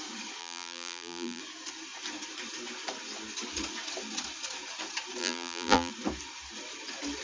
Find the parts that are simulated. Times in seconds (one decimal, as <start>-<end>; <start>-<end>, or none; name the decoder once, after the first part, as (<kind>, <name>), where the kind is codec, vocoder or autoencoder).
0.4-1.4 (vocoder, BigVGAN v2); 5.2-5.9